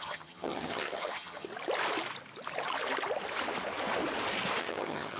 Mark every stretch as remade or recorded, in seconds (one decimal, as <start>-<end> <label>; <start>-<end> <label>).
0.0-1.5 remade; 1.5-4.6 recorded; 4.6-5.2 remade